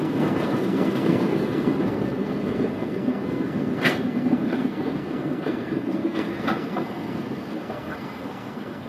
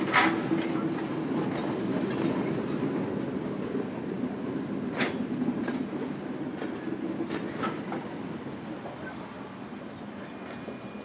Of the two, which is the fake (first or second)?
first